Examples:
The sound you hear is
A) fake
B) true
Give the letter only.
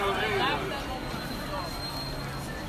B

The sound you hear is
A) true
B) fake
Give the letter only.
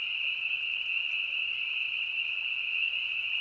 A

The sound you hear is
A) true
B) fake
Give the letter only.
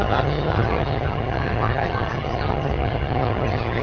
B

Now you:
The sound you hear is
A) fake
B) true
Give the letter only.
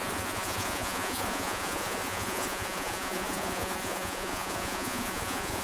A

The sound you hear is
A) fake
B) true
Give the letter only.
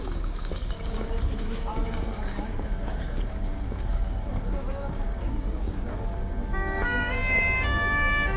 A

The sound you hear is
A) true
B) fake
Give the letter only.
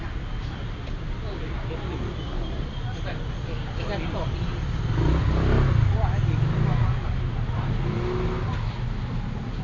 A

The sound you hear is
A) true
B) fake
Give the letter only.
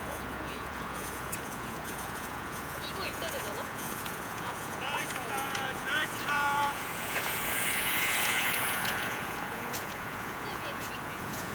B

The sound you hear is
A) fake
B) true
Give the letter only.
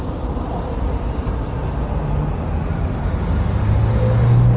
B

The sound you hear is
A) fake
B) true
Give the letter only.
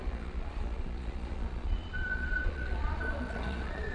A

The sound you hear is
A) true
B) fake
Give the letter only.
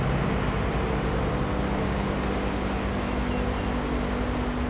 A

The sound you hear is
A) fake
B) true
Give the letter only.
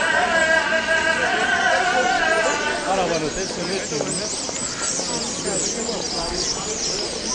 B